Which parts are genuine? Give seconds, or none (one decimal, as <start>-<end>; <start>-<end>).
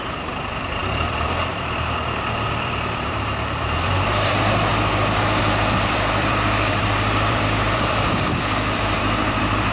4.7-5.4